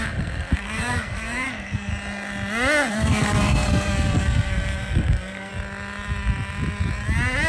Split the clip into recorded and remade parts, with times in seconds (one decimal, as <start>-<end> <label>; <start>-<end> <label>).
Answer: 0.0-1.9 remade; 1.9-2.9 recorded; 2.9-5.5 remade; 5.5-7.5 recorded